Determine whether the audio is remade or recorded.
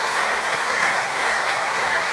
remade